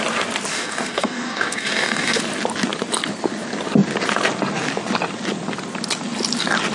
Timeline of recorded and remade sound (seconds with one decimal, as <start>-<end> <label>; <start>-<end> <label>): 0.0-0.5 recorded; 0.5-2.2 remade; 2.2-6.7 recorded